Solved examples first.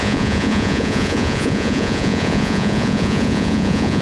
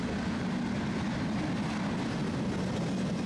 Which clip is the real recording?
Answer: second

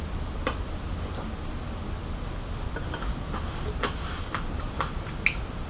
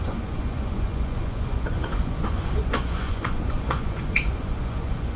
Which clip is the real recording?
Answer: first